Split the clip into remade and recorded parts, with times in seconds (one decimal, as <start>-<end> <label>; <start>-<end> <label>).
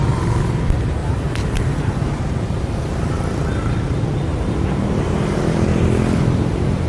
0.0-1.0 recorded; 1.0-3.0 remade; 3.0-4.3 recorded; 4.3-6.9 remade